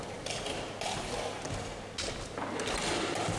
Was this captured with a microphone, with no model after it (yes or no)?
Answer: yes